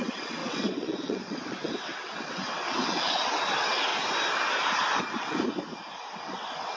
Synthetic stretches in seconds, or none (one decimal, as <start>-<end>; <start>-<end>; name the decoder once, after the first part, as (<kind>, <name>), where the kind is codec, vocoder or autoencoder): 0.0-3.9 (vocoder, WaveNeXt); 6.1-6.8